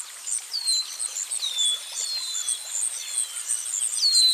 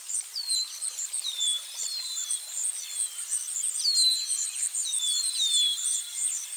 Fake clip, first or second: second